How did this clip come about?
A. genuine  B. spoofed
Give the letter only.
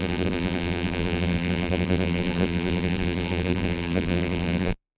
B